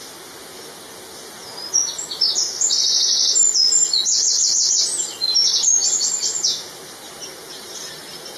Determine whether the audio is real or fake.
real